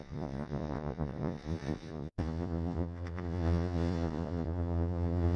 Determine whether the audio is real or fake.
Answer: fake